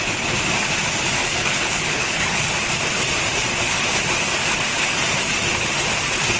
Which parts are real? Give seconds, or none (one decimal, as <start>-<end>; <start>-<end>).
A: 0.0-1.2; 2.5-6.4